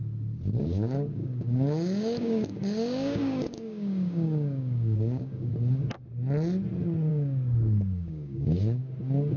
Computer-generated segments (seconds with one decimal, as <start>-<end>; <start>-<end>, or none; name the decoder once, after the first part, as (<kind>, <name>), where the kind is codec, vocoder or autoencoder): 0.6-5.5 (codec, DAC); 7.1-8.9